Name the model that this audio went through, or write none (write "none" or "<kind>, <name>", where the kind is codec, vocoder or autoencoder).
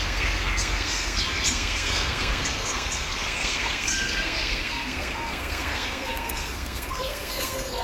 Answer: codec, SNAC